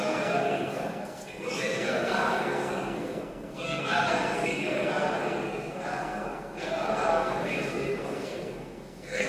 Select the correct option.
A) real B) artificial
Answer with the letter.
B